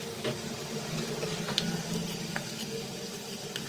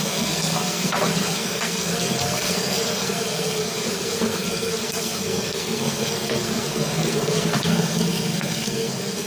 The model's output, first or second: second